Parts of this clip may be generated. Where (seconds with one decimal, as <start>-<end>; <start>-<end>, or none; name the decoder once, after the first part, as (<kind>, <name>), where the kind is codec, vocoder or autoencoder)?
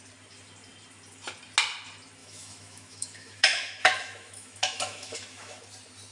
2.2-5.6 (autoencoder, DAC-VAE)